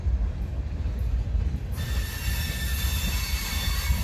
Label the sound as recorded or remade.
recorded